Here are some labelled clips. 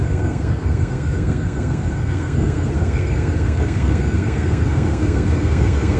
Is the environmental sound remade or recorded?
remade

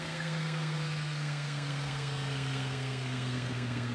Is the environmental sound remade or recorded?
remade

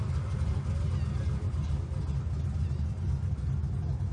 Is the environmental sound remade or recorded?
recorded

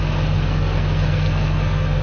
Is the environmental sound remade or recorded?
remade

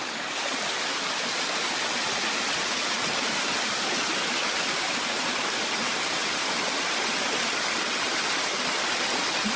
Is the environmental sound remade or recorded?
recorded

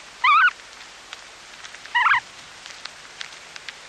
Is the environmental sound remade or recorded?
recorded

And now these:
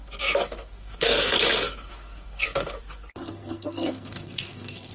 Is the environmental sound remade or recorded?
remade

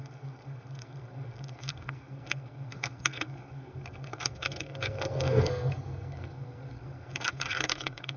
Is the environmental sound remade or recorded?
remade